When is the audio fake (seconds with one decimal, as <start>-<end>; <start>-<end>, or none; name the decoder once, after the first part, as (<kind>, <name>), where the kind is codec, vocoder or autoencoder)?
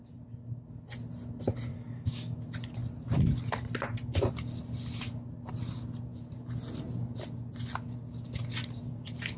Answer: 1.7-2.4 (codec, DAC)